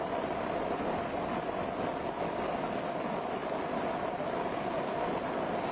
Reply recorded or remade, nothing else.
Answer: recorded